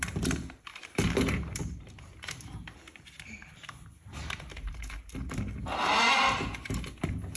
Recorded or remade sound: remade